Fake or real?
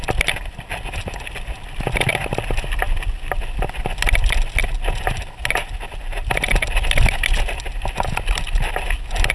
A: real